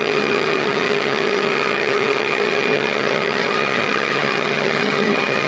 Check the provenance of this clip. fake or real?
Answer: fake